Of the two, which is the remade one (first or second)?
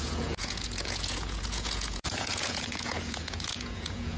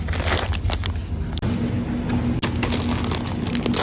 first